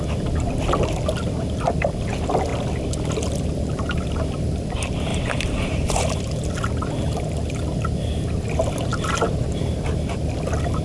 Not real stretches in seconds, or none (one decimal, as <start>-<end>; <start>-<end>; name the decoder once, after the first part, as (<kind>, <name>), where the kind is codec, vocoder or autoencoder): 5.1-6.0 (vocoder, BigVGAN v2); 8.9-10.2